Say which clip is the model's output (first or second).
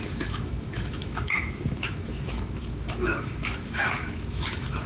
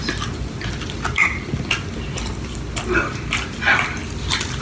first